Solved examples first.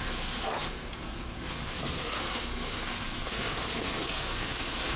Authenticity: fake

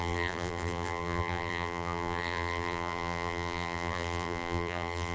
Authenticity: fake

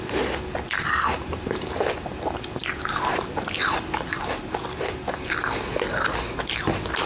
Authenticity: real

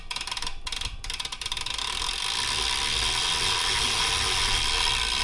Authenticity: real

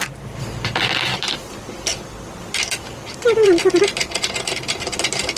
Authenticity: real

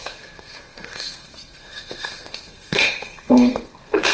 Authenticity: fake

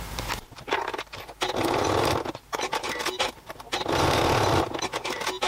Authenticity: real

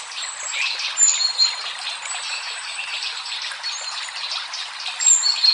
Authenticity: real